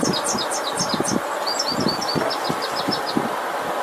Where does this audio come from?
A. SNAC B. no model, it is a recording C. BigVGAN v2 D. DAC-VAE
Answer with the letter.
B